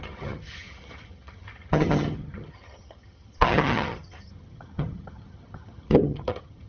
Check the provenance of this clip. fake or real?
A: fake